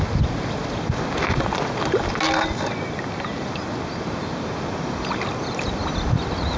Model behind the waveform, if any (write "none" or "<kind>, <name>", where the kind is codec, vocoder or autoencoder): none